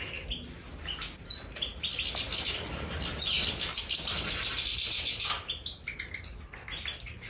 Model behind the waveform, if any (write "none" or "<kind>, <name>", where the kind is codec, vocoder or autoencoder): none